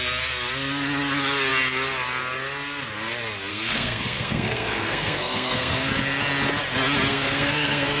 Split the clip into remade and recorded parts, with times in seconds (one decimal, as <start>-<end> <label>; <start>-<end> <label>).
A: 0.0-3.5 recorded; 3.5-5.9 remade; 5.9-7.1 recorded; 7.1-8.0 remade

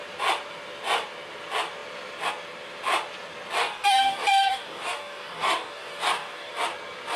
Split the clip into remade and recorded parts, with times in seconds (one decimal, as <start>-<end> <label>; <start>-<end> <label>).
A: 0.0-3.6 recorded; 3.6-6.5 remade; 6.5-7.2 recorded

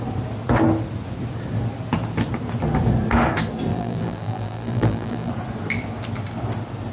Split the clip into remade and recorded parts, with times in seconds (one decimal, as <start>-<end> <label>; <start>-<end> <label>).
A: 0.0-3.7 recorded; 3.7-5.3 remade; 5.3-6.9 recorded